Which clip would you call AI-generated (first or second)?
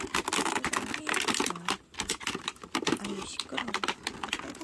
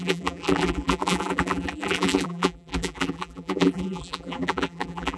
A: second